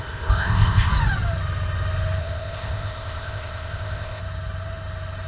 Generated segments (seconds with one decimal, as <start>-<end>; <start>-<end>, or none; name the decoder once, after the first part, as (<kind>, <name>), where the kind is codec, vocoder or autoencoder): 0.0-0.9 (codec, ZipCodec); 2.2-4.2